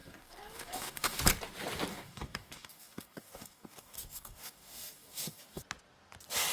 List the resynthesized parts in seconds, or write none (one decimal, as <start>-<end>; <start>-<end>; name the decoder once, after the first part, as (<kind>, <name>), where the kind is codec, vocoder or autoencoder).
0.0-1.2 (codec, DAC); 1.9-5.6